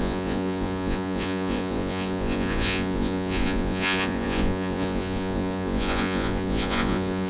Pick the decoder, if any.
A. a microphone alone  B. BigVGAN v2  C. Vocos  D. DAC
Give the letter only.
C